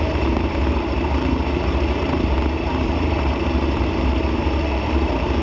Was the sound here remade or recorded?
remade